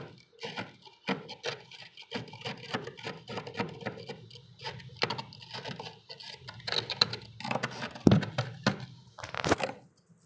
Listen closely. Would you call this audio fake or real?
real